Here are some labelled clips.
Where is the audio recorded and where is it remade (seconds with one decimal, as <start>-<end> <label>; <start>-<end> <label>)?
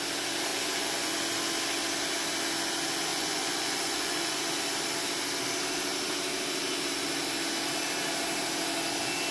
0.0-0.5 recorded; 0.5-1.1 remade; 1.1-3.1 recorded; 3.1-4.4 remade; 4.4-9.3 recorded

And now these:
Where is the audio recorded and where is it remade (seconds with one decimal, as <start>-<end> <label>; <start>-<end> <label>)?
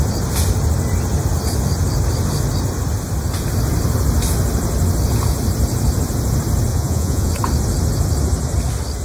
0.0-6.7 recorded; 6.7-7.3 remade; 7.3-9.0 recorded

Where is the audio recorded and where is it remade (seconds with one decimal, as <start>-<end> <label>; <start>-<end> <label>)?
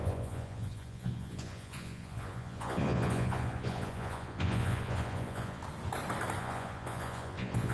0.0-5.6 remade; 5.6-6.4 recorded; 6.4-7.7 remade